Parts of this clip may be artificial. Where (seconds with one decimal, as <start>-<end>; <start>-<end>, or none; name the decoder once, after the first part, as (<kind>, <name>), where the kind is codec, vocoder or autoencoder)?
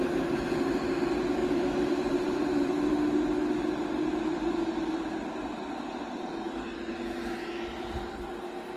1.4-2.9 (vocoder, BigVGAN v2)